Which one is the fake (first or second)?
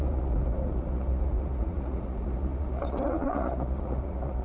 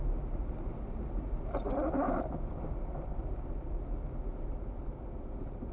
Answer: first